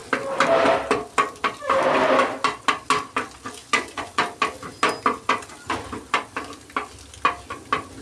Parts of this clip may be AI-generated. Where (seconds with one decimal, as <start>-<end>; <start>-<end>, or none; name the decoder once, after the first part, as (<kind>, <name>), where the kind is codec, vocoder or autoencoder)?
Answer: 3.6-4.2 (vocoder, Vocos)